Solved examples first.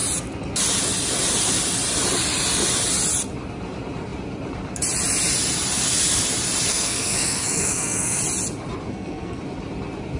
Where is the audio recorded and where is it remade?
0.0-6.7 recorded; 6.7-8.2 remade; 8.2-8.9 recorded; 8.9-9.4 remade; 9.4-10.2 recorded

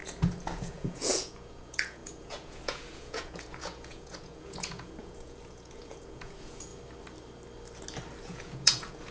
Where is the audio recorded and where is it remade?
0.0-6.7 remade; 6.7-8.2 recorded; 8.2-9.1 remade